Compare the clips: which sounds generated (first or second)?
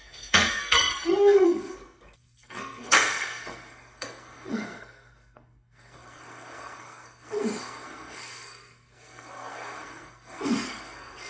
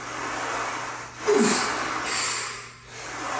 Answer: first